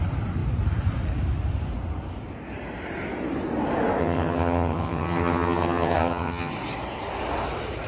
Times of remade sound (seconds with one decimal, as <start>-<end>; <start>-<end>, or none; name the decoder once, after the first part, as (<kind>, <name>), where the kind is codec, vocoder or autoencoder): 4.0-6.5 (vocoder, HiFi-GAN)